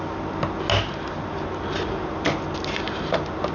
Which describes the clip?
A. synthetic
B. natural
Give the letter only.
B